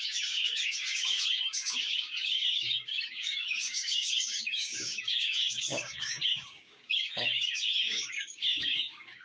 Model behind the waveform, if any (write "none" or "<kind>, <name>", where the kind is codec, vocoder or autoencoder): codec, DAC